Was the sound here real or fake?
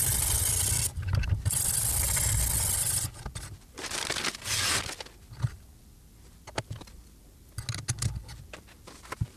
real